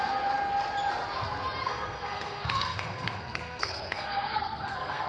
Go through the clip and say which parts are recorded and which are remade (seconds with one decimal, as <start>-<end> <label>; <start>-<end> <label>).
0.0-1.6 recorded; 1.6-5.1 remade